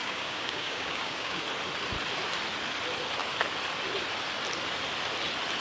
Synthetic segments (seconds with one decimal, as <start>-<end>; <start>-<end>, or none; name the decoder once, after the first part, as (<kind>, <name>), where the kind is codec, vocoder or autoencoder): 0.0-1.4 (codec, DAC)